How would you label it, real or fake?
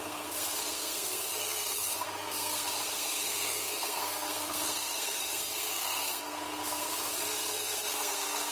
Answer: fake